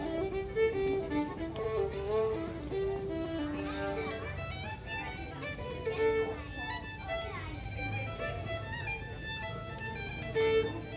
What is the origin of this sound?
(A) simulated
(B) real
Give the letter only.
B